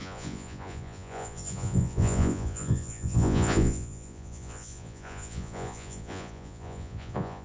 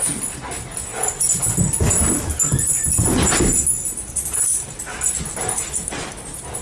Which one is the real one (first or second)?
second